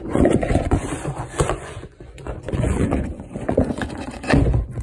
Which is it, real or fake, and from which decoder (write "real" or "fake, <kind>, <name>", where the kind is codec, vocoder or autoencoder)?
fake, vocoder, Vocos